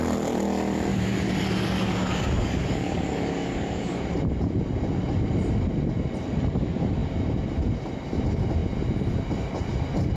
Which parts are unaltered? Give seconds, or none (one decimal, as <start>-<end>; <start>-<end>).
0.0-0.9; 4.0-10.2